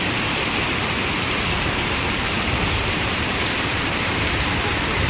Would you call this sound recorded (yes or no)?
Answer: no